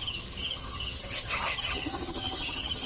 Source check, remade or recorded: remade